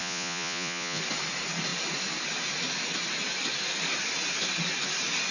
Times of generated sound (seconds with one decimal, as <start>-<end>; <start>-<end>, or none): 0.0-1.0